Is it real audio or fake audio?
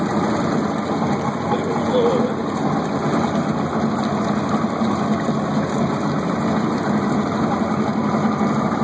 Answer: real